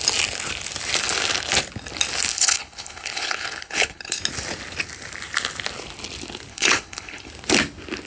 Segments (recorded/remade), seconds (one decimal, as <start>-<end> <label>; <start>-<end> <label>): 0.0-2.3 recorded; 2.3-4.2 remade; 4.2-6.5 recorded; 6.5-7.3 remade; 7.3-8.1 recorded